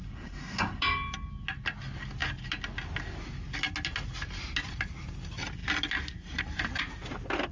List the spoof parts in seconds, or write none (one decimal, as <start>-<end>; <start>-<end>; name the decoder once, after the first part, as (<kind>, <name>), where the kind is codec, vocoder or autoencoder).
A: 0.0-0.8 (codec, SNAC)